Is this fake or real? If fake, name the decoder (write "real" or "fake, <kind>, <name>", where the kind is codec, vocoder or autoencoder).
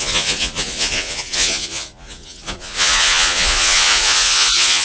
fake, vocoder, Vocos